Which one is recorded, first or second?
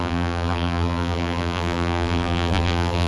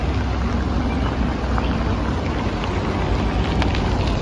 second